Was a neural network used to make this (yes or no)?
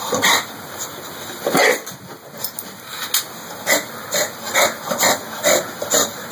no